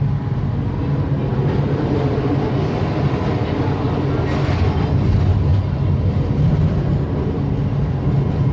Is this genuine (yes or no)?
yes